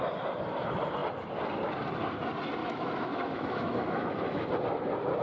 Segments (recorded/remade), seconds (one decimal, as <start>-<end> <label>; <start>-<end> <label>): 0.0-2.6 recorded; 2.6-4.5 remade; 4.5-5.2 recorded